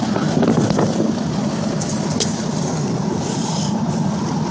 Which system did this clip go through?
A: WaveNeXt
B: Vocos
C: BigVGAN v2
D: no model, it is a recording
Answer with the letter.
D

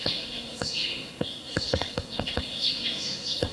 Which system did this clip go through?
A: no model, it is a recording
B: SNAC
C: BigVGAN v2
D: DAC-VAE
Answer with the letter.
B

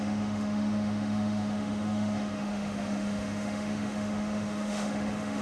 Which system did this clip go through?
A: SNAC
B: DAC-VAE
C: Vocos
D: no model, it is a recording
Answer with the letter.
B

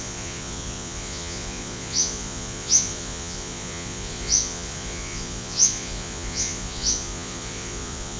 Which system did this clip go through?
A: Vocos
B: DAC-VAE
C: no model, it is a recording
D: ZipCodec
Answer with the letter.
A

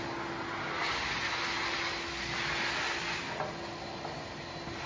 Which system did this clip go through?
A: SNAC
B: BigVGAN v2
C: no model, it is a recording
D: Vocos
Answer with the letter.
C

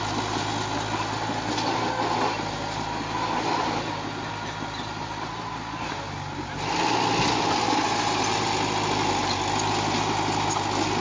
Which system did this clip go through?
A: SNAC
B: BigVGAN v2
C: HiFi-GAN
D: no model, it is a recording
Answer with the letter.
D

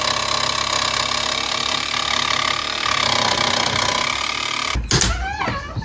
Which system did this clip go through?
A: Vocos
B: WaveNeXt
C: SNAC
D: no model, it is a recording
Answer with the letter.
D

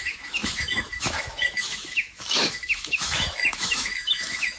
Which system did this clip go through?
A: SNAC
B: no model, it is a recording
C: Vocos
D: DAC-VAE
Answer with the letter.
D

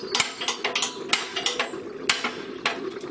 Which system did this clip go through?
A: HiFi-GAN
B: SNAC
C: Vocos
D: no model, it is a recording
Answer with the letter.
D